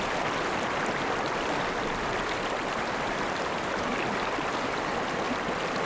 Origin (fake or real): real